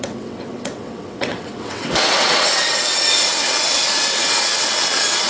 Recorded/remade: remade